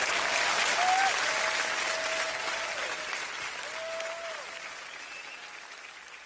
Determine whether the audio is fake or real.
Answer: real